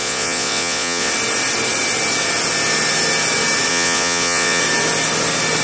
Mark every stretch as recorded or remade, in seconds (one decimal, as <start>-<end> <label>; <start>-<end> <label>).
0.0-1.1 remade; 1.1-3.7 recorded; 3.7-4.6 remade; 4.6-5.6 recorded